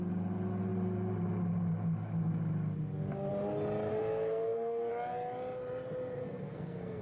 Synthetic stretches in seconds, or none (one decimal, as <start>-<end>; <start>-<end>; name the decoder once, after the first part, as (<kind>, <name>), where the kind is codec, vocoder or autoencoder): 3.9-4.9 (codec, SNAC); 6.2-7.0